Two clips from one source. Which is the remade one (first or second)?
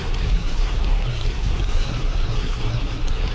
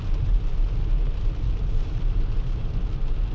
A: first